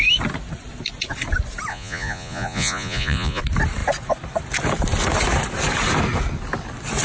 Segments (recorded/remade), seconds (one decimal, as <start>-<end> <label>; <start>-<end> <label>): 0.0-1.7 recorded; 1.7-3.4 remade; 3.4-7.0 recorded